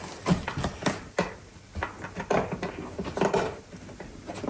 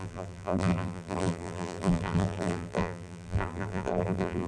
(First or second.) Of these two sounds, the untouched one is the first